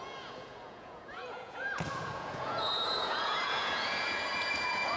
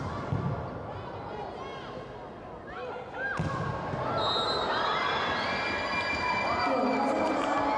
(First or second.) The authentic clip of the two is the second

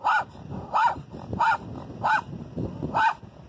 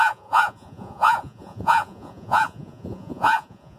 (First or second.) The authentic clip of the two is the first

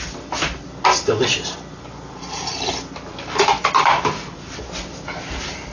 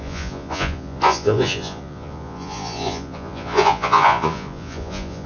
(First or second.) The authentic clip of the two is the first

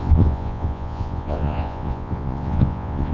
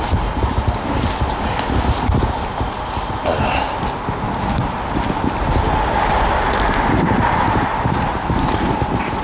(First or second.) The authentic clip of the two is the second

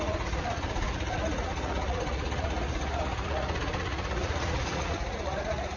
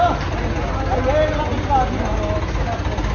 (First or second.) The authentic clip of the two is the second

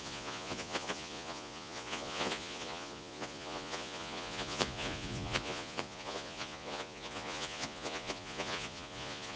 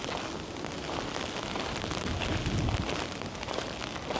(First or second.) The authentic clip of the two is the second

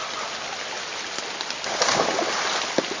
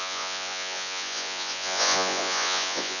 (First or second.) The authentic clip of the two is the first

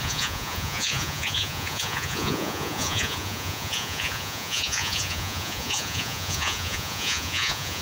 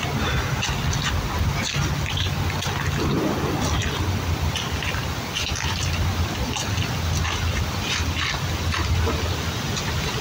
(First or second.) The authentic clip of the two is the second